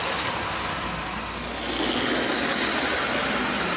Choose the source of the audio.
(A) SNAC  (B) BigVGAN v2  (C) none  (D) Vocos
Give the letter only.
C